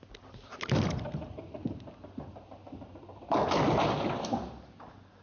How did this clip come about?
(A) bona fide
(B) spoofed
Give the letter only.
A